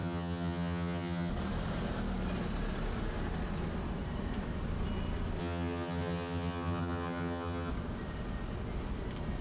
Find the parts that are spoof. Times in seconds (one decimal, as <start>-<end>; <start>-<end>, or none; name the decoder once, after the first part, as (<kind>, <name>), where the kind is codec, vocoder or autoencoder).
0.0-1.3 (vocoder, HiFi-GAN); 5.4-7.7